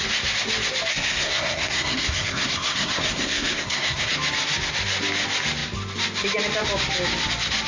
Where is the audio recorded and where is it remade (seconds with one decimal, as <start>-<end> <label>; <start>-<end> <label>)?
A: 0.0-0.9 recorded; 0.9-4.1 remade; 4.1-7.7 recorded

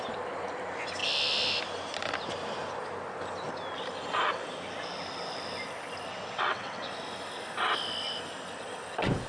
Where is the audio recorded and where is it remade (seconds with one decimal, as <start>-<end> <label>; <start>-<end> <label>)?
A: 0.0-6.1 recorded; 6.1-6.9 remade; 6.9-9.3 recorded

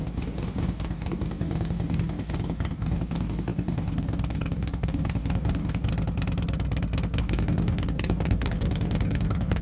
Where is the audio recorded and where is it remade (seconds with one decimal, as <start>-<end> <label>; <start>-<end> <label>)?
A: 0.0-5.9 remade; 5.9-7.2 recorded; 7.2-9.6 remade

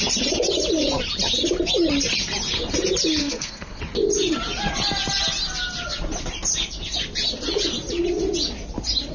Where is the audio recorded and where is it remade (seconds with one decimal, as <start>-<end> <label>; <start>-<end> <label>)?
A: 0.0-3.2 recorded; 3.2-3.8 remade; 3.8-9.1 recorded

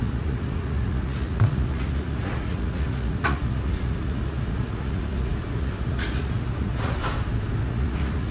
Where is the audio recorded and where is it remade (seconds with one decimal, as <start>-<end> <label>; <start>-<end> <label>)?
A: 0.0-7.0 remade; 7.0-7.6 recorded; 7.6-8.3 remade

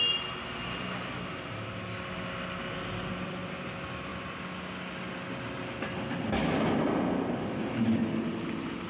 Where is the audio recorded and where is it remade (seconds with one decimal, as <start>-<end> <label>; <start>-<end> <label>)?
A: 0.0-8.9 recorded

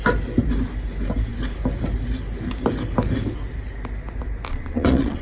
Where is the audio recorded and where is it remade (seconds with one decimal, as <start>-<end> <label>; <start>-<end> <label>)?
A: 0.0-4.5 recorded; 4.5-5.2 remade

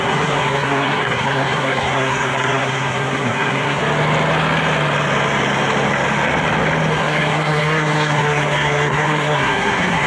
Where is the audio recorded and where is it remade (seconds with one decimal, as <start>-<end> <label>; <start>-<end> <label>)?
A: 0.0-3.8 remade; 3.8-7.0 recorded; 7.0-10.1 remade